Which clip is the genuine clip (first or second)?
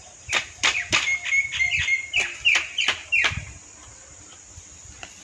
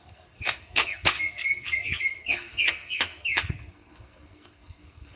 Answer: first